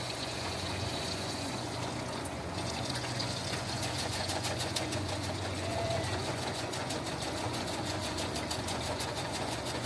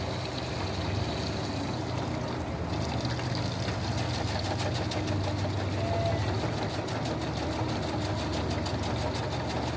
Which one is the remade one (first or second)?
first